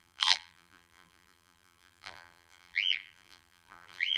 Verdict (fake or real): fake